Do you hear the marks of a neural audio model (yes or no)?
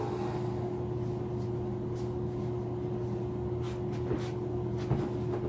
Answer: no